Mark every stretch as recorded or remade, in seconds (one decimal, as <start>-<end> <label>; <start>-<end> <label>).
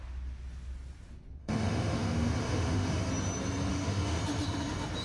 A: 0.0-1.4 recorded; 1.4-3.1 remade; 3.1-3.7 recorded; 3.7-4.2 remade; 4.2-5.0 recorded